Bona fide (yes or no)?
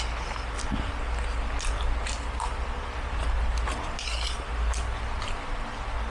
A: yes